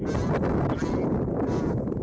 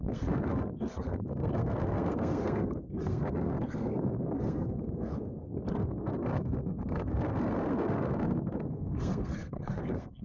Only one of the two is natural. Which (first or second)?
first